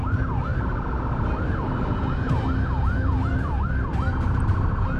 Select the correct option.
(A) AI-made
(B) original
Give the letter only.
B